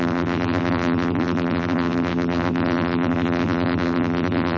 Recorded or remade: remade